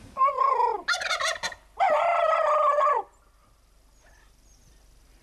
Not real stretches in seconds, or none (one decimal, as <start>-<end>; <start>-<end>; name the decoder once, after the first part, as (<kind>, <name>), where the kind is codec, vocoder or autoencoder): none

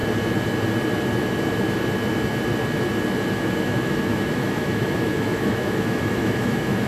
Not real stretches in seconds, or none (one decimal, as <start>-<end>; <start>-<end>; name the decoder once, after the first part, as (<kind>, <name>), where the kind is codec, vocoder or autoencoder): 3.3-6.9 (autoencoder, DAC-VAE)

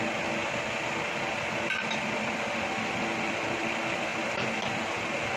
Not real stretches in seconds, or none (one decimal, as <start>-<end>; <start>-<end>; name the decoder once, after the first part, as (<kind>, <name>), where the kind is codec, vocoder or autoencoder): none

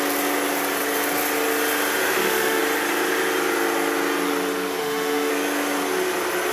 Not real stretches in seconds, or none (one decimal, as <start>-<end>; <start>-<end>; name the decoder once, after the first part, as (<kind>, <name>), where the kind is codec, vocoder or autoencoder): 2.0-2.6 (autoencoder, DAC-VAE); 4.8-5.3

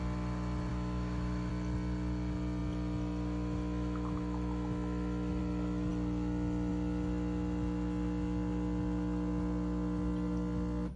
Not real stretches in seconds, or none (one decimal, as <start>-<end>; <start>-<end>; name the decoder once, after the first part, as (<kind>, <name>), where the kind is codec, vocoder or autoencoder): 0.7-1.5 (autoencoder, DAC-VAE)